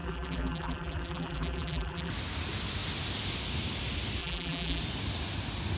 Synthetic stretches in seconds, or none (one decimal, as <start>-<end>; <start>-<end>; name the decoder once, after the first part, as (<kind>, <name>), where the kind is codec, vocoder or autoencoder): 0.0-2.1 (vocoder, BigVGAN v2); 4.2-4.8